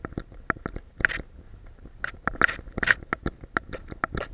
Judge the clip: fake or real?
real